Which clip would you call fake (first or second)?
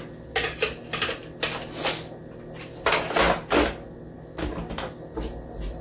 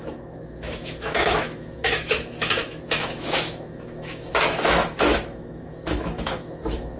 second